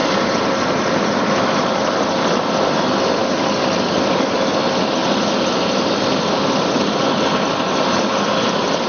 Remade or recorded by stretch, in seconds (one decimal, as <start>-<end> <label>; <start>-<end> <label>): 0.0-2.5 remade; 2.5-8.9 recorded